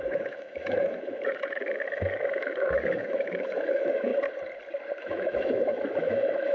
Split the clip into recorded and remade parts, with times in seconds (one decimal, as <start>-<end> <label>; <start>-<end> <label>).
0.0-4.1 remade; 4.1-5.0 recorded; 5.0-6.5 remade